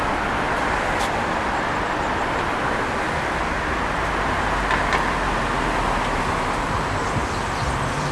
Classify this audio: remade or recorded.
recorded